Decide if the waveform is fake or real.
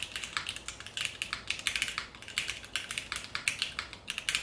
real